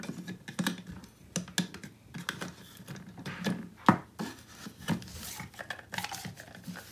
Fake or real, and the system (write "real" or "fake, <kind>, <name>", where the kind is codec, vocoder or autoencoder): real